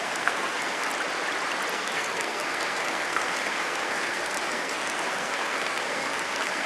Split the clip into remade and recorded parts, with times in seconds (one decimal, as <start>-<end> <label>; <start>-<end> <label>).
0.0-0.9 remade; 0.9-1.7 recorded; 1.7-6.7 remade

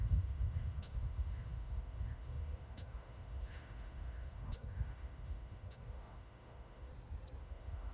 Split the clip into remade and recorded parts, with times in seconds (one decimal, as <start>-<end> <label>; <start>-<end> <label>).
0.0-6.9 remade; 6.9-7.4 recorded; 7.4-7.9 remade

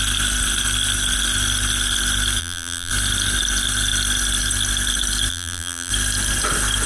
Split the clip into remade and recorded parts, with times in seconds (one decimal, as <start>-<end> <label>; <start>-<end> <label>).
0.0-2.4 recorded; 2.4-2.9 remade; 2.9-5.3 recorded; 5.3-5.9 remade; 5.9-6.9 recorded

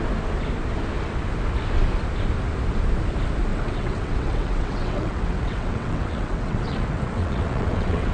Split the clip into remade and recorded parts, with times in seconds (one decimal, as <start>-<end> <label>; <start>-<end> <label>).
0.0-3.5 recorded; 3.5-8.1 remade

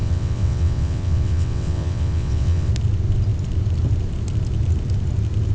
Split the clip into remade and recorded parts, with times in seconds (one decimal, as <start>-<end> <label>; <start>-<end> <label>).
0.0-2.7 remade; 2.7-5.5 recorded

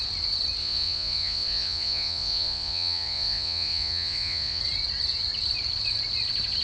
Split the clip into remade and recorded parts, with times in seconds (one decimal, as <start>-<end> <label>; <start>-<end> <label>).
0.0-0.6 recorded; 0.6-4.6 remade; 4.6-6.6 recorded